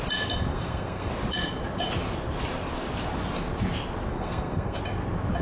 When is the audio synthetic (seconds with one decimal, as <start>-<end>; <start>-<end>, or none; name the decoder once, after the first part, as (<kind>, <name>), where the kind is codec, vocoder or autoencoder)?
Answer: 0.5-1.1 (codec, SNAC); 4.1-4.8